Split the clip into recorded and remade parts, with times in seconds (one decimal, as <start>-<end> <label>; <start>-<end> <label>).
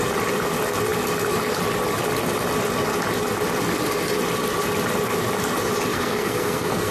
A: 0.0-5.9 recorded; 5.9-6.9 remade